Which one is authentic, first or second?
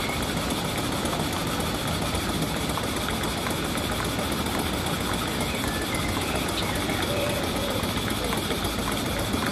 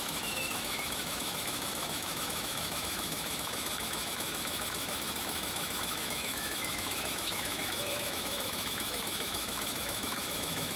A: first